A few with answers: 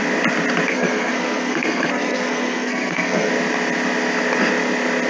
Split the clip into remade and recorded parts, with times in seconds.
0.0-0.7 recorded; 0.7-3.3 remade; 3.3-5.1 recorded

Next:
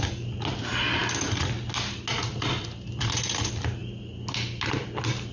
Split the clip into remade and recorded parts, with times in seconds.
0.0-5.3 recorded

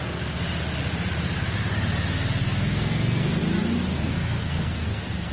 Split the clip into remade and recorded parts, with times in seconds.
0.0-2.4 recorded; 2.4-3.4 remade; 3.4-3.9 recorded; 3.9-5.3 remade

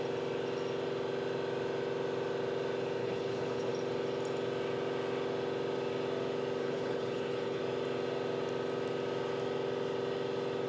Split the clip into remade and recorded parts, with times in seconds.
0.0-3.0 recorded; 3.0-3.7 remade; 3.7-6.6 recorded; 6.6-7.6 remade; 7.6-10.7 recorded

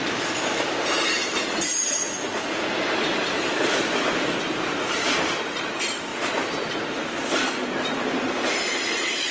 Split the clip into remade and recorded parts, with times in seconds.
0.0-2.0 remade; 2.0-2.9 recorded; 2.9-9.3 remade